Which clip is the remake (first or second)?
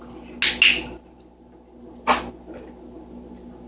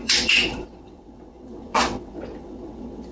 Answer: second